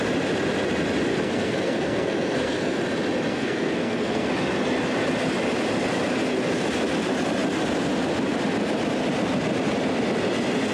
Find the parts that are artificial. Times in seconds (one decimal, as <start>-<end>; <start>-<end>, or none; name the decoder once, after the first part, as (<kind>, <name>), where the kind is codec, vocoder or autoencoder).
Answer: 1.1-2.8 (codec, SNAC); 3.3-4.3